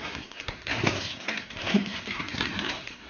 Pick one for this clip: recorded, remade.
remade